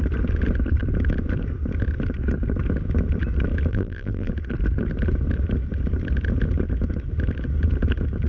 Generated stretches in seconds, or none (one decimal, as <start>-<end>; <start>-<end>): 3.7-4.3